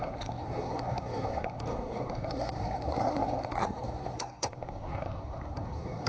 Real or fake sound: fake